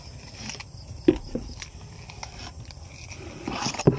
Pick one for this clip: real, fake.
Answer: real